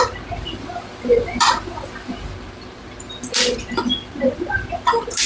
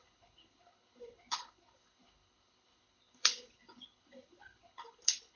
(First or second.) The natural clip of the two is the first